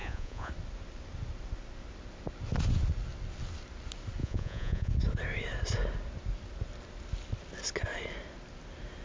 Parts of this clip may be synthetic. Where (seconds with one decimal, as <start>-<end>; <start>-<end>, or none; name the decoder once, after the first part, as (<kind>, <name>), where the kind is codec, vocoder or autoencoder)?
0.0-0.5 (vocoder, Vocos); 4.2-4.9